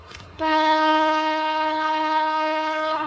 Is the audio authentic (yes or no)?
no